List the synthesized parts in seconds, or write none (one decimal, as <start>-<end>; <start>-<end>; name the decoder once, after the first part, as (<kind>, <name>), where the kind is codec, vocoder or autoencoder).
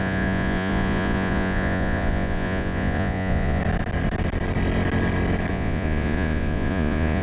0.0-3.6 (vocoder, Vocos); 5.5-7.2